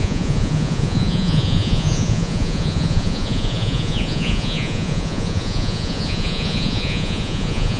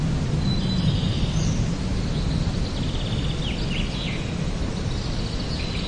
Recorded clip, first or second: second